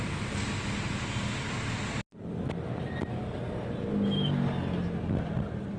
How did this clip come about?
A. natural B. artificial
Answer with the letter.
A